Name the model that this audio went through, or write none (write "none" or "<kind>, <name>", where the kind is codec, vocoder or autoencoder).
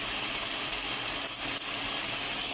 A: none